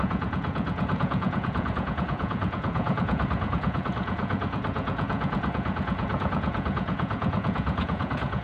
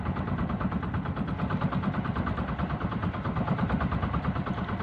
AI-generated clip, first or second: first